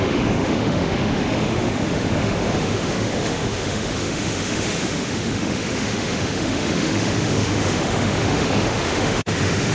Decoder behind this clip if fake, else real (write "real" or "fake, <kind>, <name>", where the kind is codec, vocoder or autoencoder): fake, autoencoder, DAC-VAE